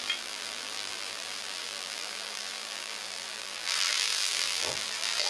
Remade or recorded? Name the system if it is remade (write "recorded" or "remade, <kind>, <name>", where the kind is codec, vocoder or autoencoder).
remade, vocoder, BigVGAN v2